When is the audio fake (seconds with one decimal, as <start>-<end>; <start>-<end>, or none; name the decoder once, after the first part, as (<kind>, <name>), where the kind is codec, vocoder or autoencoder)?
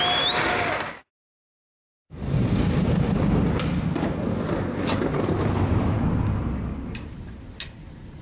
none